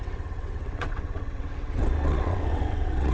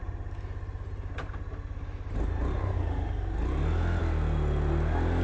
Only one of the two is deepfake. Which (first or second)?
first